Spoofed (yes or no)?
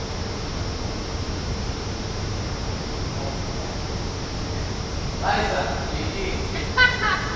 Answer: no